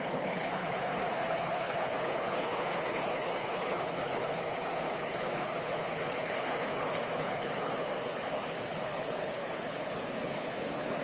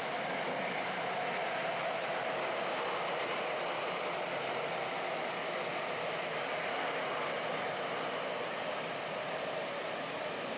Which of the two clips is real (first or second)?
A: second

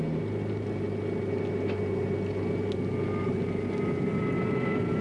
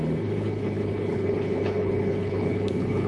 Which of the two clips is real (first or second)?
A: first